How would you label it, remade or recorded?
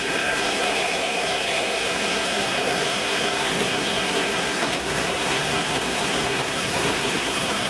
remade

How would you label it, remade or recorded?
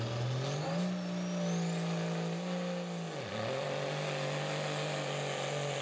recorded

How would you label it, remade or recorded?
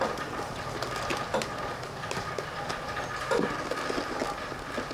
recorded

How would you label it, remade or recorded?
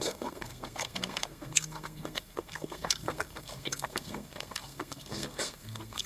remade